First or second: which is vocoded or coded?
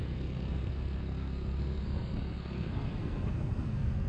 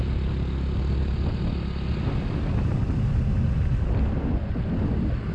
first